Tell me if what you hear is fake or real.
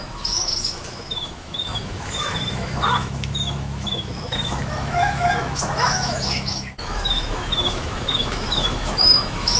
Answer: fake